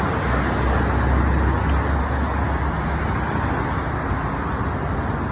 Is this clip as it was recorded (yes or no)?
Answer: yes